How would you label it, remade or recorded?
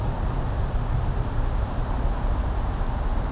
recorded